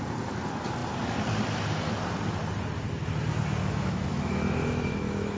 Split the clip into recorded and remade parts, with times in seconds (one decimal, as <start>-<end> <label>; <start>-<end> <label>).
0.0-3.6 recorded; 3.6-5.4 remade